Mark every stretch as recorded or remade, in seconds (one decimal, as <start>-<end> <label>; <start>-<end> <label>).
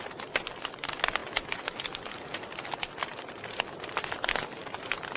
0.0-5.2 recorded